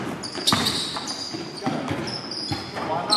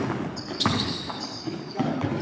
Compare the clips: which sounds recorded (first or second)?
first